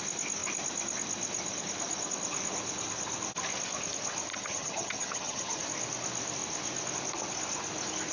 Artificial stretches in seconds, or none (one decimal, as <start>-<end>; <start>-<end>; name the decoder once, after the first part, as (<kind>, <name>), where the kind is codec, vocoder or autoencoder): 4.3-5.6 (vocoder, HiFi-GAN)